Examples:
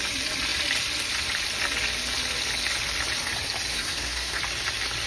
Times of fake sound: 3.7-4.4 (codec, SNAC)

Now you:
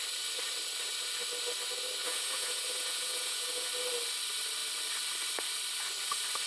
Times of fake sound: 2.0-3.7 (vocoder, Vocos)

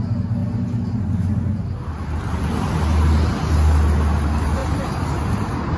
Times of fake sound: none